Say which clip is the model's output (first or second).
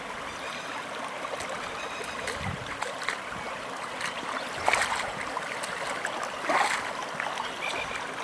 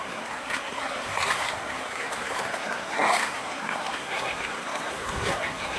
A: second